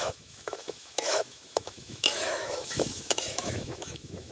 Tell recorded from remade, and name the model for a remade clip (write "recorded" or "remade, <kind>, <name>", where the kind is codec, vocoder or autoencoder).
remade, autoencoder, DAC-VAE